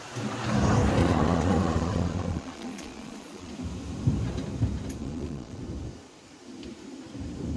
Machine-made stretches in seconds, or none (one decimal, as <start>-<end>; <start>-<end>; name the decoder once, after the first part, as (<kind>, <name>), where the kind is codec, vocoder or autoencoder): 1.0-3.5 (vocoder, Vocos); 5.0-5.6